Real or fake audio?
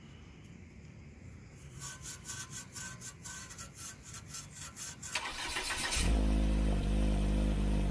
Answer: fake